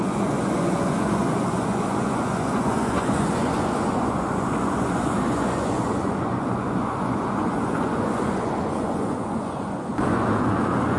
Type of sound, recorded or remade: remade